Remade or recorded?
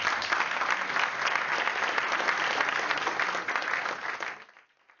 recorded